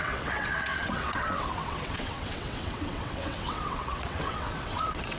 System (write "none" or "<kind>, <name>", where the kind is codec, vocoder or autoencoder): vocoder, WaveNeXt